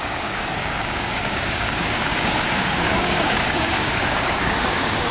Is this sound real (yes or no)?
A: no